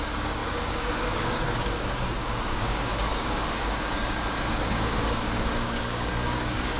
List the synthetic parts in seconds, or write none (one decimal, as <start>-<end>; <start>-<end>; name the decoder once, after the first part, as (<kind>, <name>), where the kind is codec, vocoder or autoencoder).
0.0-6.8 (codec, DAC)